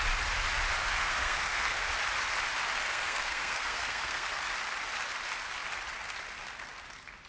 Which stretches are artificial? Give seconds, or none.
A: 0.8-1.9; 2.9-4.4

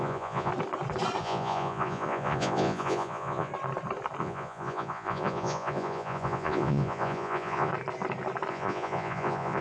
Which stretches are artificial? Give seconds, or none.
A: 0.0-0.5; 1.2-3.5; 4.2-7.7; 8.5-9.6

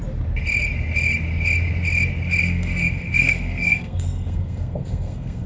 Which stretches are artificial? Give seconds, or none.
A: 2.4-5.5

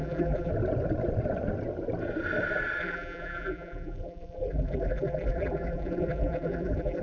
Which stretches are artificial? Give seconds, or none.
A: 0.0-0.5; 2.8-7.0

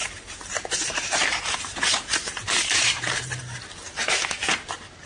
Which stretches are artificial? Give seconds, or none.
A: 0.0-3.1

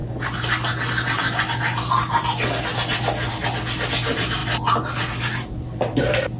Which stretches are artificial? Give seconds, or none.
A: none

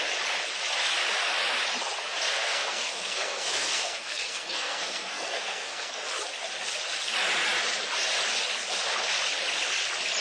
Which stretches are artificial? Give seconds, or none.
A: 2.3-5.9

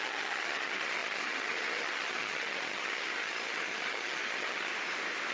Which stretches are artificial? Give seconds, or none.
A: 0.0-4.7